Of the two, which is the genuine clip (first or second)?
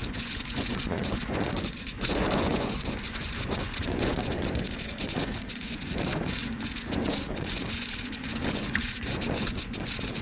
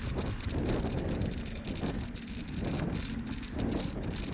second